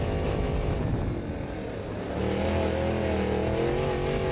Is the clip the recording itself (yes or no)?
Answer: yes